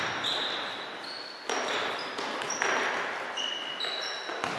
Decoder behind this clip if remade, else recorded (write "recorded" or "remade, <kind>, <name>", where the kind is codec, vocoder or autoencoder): recorded